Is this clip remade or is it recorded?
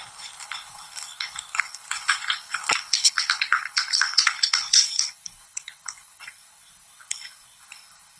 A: remade